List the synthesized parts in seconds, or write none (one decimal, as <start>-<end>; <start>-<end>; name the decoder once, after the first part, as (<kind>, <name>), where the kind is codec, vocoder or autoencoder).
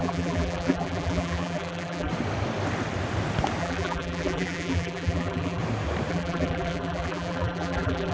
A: 0.0-2.1 (vocoder, BigVGAN v2); 3.6-5.6; 6.1-8.1